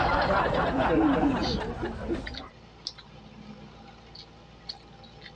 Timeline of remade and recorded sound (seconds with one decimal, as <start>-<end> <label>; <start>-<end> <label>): 0.0-5.4 recorded